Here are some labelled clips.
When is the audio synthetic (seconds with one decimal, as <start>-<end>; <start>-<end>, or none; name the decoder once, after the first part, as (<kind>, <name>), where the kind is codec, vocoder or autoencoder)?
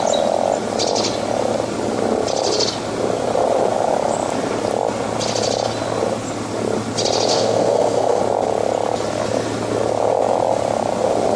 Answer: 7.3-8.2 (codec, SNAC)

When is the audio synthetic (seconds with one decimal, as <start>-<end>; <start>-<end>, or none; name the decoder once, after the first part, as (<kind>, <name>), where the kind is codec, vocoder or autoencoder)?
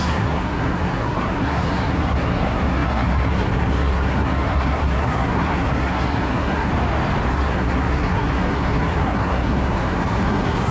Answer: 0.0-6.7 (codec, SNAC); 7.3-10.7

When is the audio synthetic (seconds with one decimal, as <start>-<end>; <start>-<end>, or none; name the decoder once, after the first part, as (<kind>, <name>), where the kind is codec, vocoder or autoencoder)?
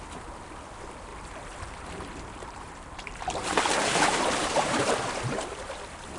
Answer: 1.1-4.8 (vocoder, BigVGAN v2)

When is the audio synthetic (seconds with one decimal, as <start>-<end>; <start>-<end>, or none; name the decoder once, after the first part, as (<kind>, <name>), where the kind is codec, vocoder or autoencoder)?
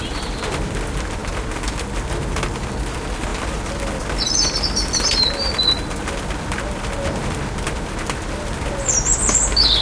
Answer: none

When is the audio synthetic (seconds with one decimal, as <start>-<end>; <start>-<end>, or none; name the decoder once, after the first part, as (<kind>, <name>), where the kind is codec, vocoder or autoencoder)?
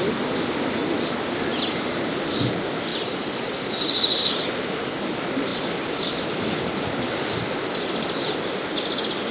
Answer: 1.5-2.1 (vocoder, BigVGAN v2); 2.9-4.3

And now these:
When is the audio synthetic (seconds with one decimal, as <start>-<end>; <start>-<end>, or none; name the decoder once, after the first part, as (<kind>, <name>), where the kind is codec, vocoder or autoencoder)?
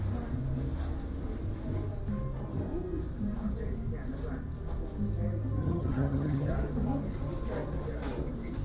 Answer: 5.6-6.5 (vocoder, HiFi-GAN)